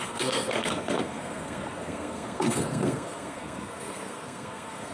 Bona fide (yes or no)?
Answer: no